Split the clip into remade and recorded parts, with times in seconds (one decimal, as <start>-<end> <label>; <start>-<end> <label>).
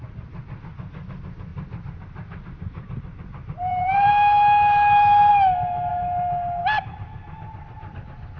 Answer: 0.0-1.5 recorded; 1.5-4.1 remade; 4.1-8.4 recorded